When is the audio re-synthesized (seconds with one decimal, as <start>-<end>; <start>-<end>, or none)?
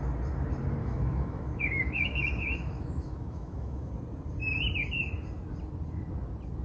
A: 0.8-3.9